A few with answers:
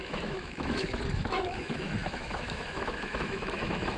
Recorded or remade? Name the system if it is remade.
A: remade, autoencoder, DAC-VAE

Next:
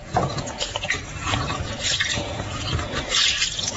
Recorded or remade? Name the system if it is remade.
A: remade, vocoder, Vocos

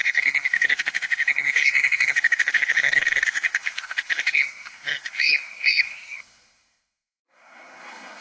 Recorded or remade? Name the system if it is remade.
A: remade, codec, SNAC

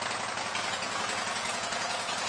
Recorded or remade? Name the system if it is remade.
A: remade, vocoder, Vocos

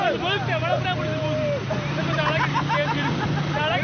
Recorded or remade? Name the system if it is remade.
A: recorded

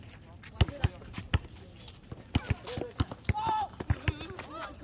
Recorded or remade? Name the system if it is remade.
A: recorded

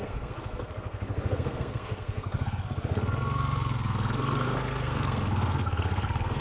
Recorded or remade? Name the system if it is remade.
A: remade, codec, SNAC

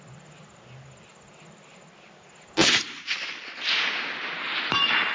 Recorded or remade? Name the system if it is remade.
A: recorded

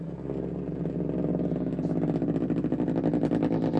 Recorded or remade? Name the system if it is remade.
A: recorded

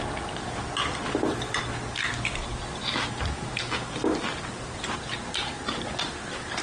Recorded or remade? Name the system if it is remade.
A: recorded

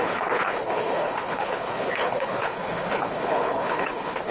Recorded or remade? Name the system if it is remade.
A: remade, codec, HILCodec